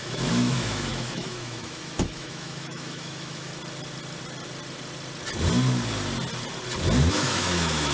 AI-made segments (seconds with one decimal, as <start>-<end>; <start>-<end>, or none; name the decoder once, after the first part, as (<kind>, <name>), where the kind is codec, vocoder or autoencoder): 0.0-3.5 (autoencoder, DAC-VAE); 7.1-7.9